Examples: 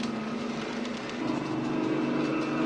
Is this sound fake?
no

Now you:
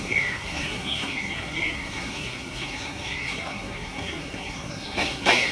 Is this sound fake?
yes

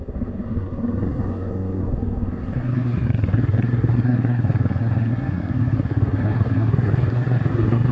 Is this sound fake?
yes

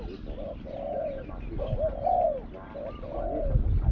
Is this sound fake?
no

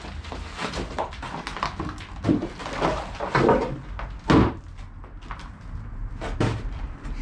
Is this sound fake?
no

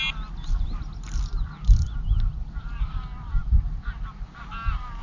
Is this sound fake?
no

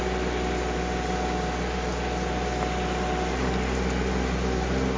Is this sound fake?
no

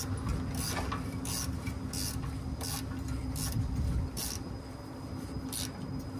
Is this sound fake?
no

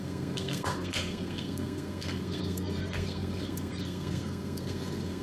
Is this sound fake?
yes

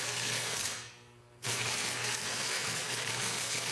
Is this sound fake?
yes